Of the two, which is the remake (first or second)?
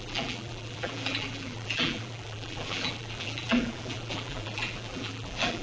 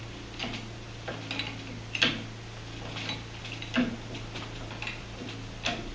first